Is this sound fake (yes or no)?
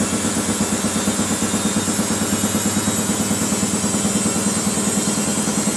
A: no